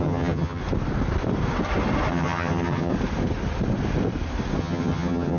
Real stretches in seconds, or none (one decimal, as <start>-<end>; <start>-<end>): 0.6-2.1; 2.9-4.6